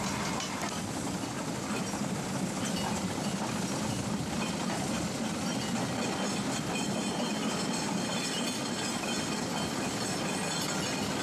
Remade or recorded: recorded